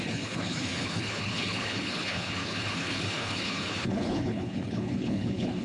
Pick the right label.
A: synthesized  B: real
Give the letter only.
A